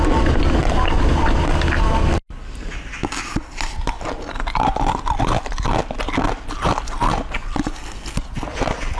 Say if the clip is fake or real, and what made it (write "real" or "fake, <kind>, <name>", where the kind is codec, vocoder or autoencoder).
real